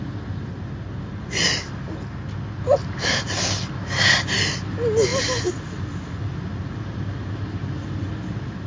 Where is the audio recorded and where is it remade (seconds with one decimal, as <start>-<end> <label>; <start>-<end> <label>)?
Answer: 0.0-5.1 recorded; 5.1-8.1 remade; 8.1-8.7 recorded

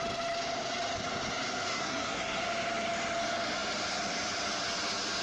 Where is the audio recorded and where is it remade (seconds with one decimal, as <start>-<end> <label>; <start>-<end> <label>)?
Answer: 0.0-1.7 recorded; 1.7-2.4 remade; 2.4-5.2 recorded

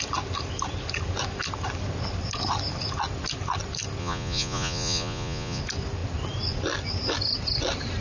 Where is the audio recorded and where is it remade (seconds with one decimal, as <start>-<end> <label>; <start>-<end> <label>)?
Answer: 0.0-4.0 recorded; 4.0-5.6 remade; 5.6-8.0 recorded

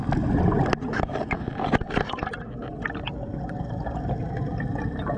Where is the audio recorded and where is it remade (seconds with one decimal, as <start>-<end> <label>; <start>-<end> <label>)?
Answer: 0.0-5.2 recorded

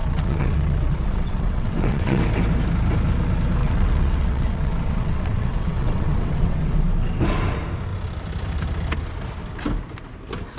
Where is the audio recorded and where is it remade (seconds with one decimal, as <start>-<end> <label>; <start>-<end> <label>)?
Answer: 0.0-2.2 remade; 2.2-3.6 recorded; 3.6-6.8 remade; 6.8-10.6 recorded

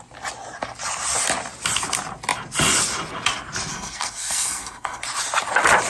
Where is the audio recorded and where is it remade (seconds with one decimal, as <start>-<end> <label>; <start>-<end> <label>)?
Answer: 0.0-3.7 recorded; 3.7-5.0 remade; 5.0-5.9 recorded